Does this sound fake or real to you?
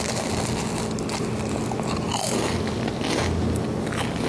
real